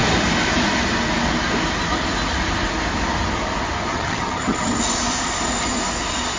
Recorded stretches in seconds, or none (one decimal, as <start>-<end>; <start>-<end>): 0.0-3.9; 4.8-6.4